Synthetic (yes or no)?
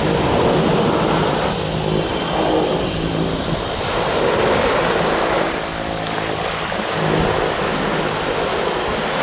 no